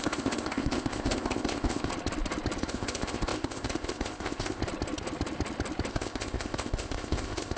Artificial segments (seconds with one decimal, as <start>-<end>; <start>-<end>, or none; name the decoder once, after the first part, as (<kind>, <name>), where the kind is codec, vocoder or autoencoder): 0.0-1.9 (codec, ZipCodec); 2.6-4.6; 5.9-7.6